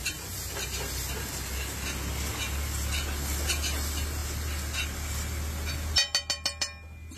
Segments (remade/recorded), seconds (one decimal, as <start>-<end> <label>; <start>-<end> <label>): 0.0-7.2 recorded

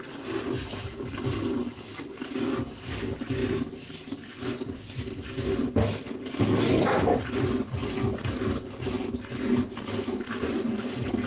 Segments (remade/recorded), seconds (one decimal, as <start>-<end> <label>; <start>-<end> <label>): 0.0-11.3 recorded

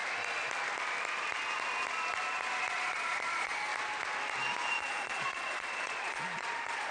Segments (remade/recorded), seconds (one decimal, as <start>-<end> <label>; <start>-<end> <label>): 0.0-2.7 recorded; 2.7-3.7 remade; 3.7-4.8 recorded; 4.8-6.9 remade

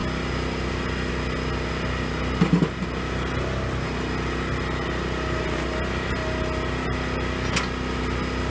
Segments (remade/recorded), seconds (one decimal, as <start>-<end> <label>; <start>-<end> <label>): 0.0-8.5 recorded

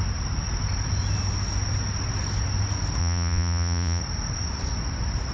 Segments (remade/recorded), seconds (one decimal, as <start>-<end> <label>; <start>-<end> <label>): 0.0-3.0 recorded; 3.0-4.0 remade; 4.0-5.3 recorded